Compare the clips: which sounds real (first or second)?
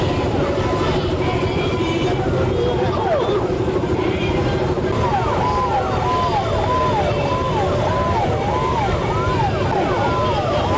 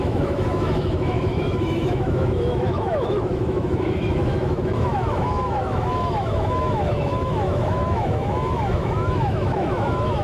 first